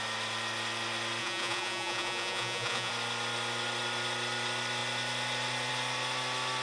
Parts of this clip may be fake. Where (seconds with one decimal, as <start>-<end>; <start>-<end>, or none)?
1.2-2.9